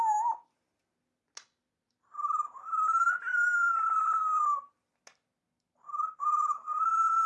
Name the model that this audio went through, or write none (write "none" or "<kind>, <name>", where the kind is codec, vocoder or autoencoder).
none